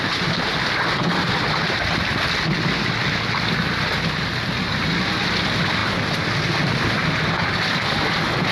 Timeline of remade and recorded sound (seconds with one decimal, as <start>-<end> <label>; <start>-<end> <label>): 0.0-8.5 recorded